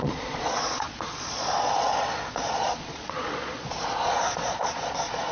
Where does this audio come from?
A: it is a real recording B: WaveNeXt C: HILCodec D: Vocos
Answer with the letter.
D